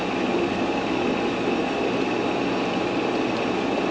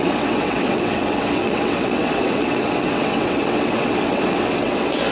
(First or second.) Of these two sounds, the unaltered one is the first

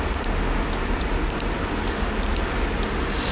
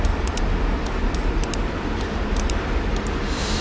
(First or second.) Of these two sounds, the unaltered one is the first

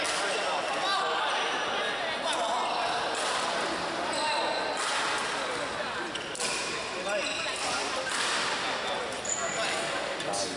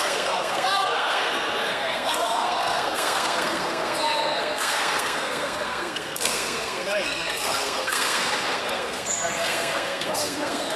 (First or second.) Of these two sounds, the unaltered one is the first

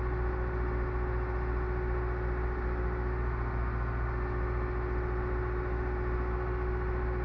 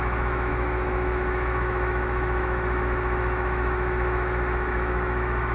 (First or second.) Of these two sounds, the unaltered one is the first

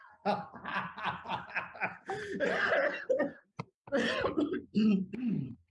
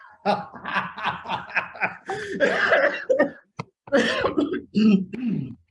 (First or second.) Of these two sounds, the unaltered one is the first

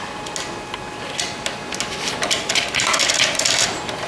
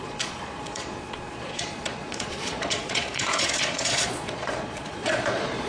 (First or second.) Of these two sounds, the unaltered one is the first